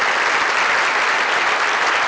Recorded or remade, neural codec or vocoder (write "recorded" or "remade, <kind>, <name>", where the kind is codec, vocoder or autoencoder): recorded